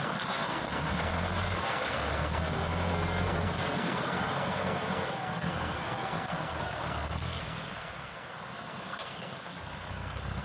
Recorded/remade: remade